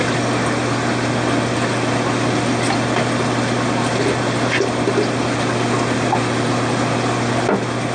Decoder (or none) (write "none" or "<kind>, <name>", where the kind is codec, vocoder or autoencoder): none